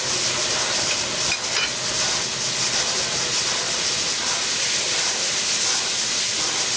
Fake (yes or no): no